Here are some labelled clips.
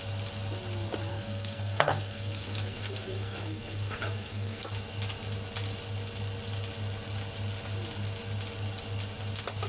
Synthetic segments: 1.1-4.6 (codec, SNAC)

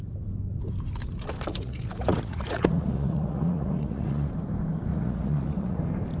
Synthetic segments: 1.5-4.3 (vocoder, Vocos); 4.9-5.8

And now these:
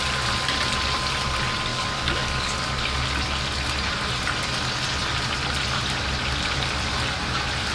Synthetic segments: 1.7-2.7 (codec, DAC)